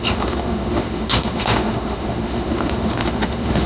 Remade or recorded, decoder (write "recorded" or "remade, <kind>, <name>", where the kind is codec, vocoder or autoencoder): remade, autoencoder, DAC-VAE